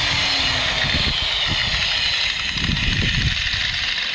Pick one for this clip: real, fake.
real